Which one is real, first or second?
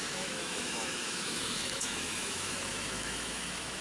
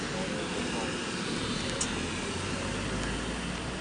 second